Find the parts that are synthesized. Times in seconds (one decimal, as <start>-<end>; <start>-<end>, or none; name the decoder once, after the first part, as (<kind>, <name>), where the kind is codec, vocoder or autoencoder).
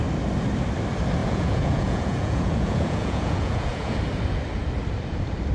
1.2-4.0 (vocoder, Vocos)